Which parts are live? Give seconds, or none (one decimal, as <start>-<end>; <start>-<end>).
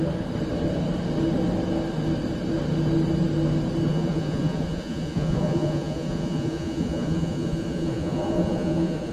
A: 0.0-3.9